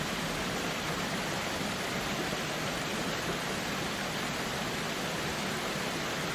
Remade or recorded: recorded